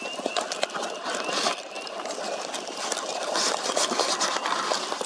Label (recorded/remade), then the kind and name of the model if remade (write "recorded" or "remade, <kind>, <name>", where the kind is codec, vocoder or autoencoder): recorded